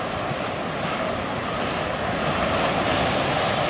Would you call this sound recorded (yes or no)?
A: yes